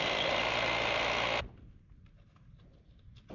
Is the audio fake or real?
real